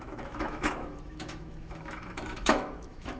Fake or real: fake